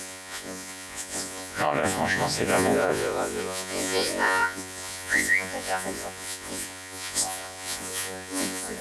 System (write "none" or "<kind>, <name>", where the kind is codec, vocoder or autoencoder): vocoder, Vocos